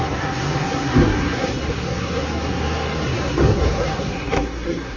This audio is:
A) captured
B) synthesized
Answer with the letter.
B